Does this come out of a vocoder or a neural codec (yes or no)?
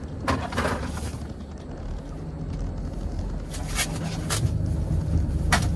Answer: no